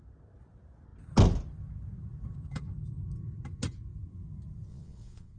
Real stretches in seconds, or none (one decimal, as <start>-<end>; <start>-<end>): 0.0-4.7